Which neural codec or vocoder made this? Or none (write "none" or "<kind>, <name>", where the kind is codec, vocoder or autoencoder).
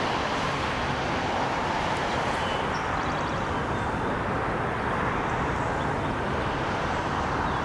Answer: none